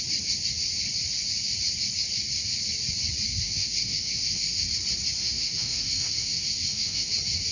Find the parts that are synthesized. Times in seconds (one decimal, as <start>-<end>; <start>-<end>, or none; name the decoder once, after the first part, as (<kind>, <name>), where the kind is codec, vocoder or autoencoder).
3.3-4.7 (autoencoder, DAC-VAE); 5.2-7.1